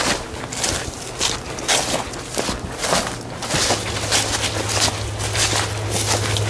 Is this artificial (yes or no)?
no